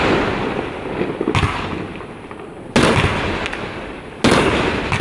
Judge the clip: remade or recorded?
recorded